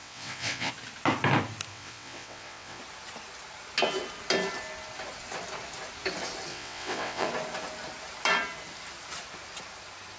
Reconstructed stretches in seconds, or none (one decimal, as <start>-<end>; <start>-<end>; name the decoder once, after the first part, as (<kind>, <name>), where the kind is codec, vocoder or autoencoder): 0.0-0.7 (vocoder, WaveNeXt); 1.7-2.8; 6.5-7.3

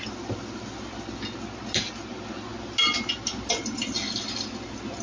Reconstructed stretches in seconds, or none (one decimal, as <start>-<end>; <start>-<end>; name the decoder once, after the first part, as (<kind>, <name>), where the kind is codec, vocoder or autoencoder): none

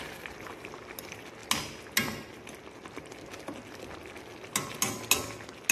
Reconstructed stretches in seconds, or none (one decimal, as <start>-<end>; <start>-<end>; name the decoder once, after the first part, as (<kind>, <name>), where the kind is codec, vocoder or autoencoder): none

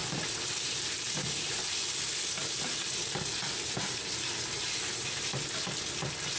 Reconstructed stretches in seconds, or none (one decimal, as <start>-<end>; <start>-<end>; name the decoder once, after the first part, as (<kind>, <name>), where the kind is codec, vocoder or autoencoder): none

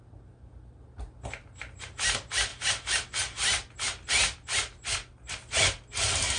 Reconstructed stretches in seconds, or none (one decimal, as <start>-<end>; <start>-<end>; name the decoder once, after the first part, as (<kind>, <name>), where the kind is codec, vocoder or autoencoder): none

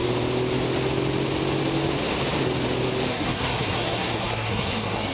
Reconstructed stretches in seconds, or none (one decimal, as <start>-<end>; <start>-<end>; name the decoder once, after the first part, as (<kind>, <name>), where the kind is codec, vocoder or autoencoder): 3.1-5.1 (codec, SNAC)

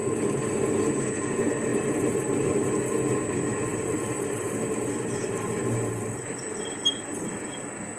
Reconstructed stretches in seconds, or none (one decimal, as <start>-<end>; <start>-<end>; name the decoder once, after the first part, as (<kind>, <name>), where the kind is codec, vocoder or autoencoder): 1.7-2.5 (vocoder, BigVGAN v2); 3.7-7.6

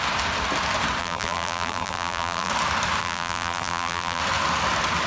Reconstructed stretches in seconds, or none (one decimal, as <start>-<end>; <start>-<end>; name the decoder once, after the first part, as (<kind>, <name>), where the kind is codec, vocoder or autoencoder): 1.0-2.5 (vocoder, BigVGAN v2); 3.0-4.2